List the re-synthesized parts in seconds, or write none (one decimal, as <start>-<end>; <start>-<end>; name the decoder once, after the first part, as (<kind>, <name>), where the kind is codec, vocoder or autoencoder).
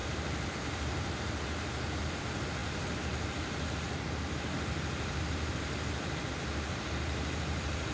0.0-7.9 (vocoder, BigVGAN v2)